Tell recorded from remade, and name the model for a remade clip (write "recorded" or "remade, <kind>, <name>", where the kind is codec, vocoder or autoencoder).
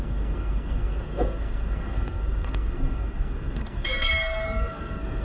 remade, codec, SNAC